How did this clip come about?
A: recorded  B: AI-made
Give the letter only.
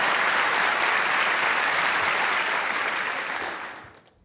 A